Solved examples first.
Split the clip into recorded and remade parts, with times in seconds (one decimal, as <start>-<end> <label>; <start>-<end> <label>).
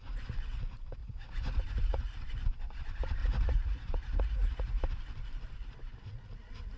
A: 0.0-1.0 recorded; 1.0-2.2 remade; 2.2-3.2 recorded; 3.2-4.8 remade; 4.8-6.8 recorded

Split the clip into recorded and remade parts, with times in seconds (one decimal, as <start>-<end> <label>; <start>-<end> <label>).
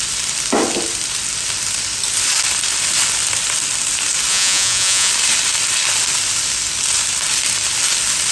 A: 0.0-4.3 recorded; 4.3-5.1 remade; 5.1-8.3 recorded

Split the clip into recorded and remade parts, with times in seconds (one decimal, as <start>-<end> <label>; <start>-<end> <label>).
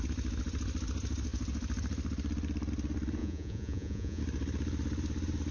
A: 0.0-3.2 recorded; 3.2-4.2 remade; 4.2-5.5 recorded